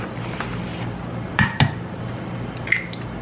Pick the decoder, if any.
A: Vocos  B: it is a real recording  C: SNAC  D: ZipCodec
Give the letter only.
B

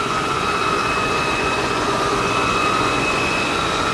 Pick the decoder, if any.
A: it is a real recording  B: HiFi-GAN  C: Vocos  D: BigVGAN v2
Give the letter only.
C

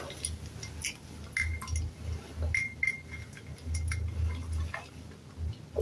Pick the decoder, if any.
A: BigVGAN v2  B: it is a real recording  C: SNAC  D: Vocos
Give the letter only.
B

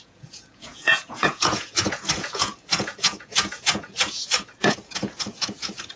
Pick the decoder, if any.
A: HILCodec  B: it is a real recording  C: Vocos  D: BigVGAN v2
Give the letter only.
C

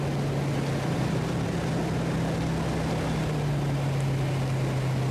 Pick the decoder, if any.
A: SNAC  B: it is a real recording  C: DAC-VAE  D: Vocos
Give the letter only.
B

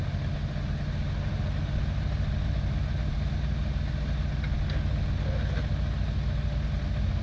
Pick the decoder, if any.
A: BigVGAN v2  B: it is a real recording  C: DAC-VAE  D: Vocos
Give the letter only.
B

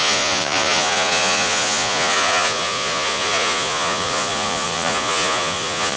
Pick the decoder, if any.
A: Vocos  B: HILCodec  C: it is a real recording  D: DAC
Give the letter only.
A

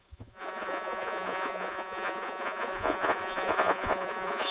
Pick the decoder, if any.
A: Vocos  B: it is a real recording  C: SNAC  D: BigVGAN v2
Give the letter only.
A